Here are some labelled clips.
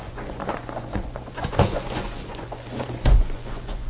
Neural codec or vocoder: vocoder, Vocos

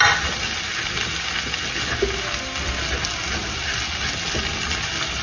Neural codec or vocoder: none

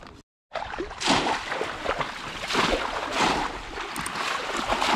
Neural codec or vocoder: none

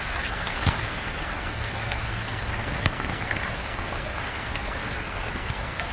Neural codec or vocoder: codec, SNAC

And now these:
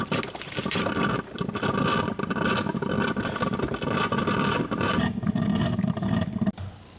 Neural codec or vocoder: none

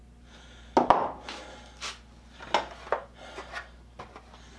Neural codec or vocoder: none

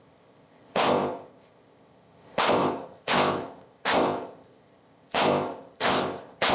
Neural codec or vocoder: codec, ZipCodec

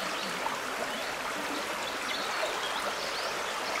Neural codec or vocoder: none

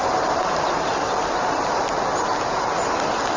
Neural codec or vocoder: none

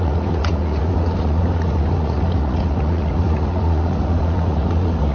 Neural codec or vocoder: vocoder, Vocos